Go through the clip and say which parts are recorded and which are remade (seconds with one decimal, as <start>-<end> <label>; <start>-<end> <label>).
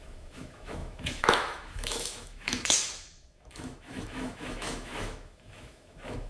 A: 0.0-6.3 remade